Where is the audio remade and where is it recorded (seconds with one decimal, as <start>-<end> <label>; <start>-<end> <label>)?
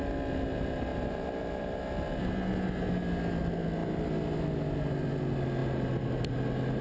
0.0-6.8 recorded